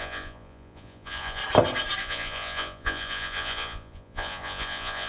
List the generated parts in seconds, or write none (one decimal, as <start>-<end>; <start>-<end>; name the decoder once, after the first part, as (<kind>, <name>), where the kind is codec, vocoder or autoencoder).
0.0-1.4 (vocoder, Vocos); 2.0-5.1